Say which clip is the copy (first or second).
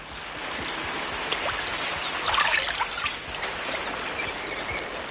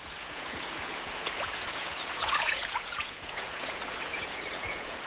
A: second